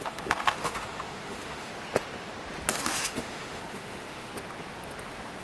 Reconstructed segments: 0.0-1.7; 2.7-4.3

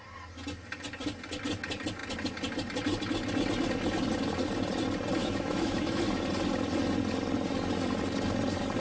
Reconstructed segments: 5.2-6.0

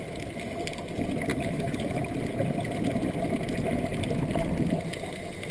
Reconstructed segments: 1.3-2.0

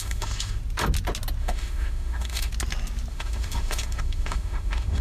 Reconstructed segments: 0.0-0.6; 1.4-2.5; 3.1-5.0

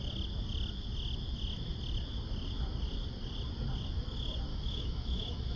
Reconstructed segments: 4.5-5.6

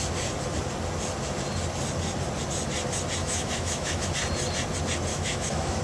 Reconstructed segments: 3.2-4.1; 5.1-5.8

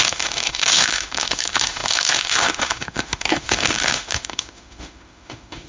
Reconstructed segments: 0.0-5.7